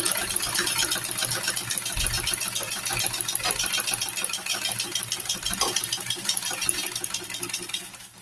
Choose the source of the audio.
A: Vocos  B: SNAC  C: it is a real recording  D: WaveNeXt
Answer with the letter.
C